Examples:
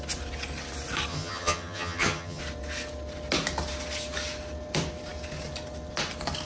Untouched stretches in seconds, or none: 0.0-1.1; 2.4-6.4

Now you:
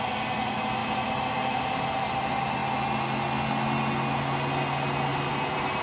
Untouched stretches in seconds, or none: 0.0-0.8; 1.9-5.1

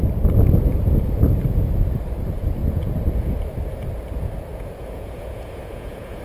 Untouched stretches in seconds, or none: 0.0-2.6; 3.4-4.5

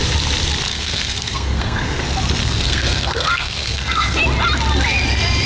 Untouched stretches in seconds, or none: 0.0-0.7; 2.0-2.4; 4.2-5.5

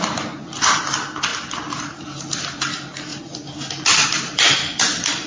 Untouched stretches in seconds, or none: 0.8-1.3; 1.9-5.3

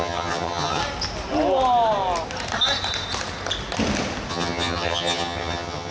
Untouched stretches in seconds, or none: 0.8-4.3

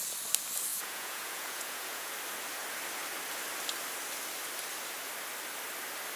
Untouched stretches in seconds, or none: 0.0-0.7; 2.1-6.2